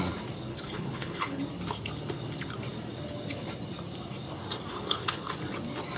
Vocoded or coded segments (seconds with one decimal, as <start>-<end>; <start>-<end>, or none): 0.5-1.4; 4.7-5.3